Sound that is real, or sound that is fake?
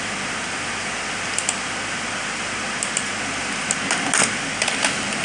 real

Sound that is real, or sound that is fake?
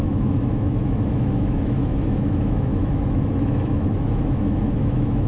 fake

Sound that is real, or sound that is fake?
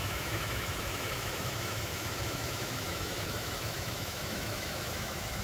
fake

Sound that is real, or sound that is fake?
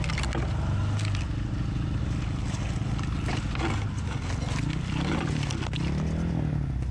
real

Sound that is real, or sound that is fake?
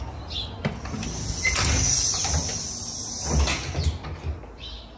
real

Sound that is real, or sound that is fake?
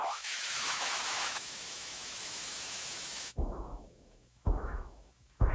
fake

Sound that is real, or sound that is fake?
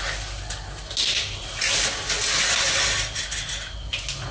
real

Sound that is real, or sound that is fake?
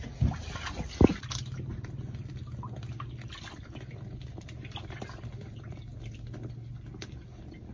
real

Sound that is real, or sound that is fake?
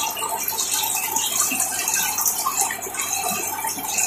real